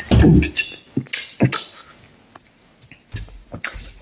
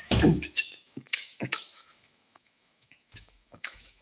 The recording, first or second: first